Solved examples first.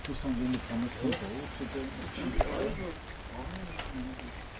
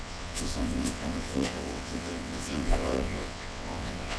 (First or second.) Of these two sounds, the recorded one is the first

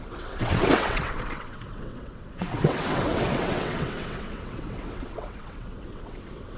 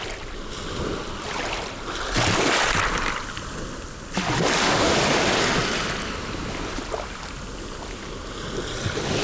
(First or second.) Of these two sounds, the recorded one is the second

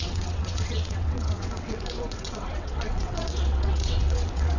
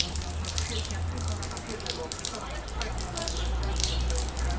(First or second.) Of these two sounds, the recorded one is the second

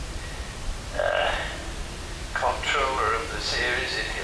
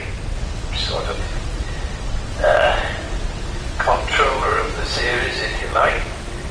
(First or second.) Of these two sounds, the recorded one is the first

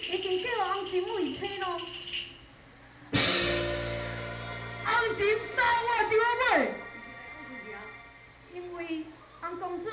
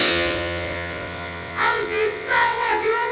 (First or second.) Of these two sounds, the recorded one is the first